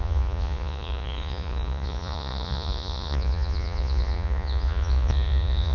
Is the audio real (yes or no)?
no